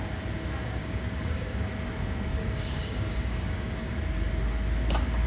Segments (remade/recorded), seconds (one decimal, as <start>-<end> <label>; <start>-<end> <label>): 0.0-0.8 recorded; 0.8-1.7 remade; 1.7-2.3 recorded; 2.3-3.9 remade; 3.9-5.3 recorded